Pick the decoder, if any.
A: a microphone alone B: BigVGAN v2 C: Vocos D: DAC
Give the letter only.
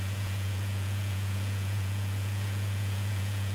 C